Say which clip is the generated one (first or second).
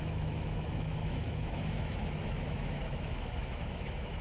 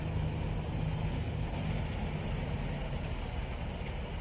first